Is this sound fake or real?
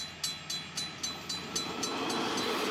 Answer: real